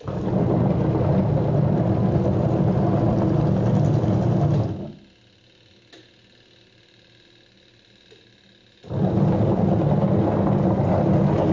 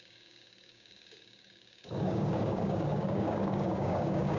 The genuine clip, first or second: first